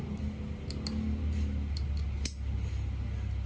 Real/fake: real